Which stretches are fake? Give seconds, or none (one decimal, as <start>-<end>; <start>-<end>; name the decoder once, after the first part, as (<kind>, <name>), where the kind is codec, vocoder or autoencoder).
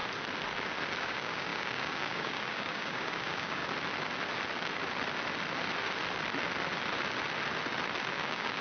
1.0-3.6 (codec, DAC); 8.1-8.6